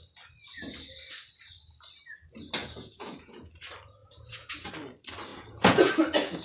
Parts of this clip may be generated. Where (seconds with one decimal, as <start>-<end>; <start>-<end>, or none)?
2.6-3.5; 4.0-4.7; 5.3-5.9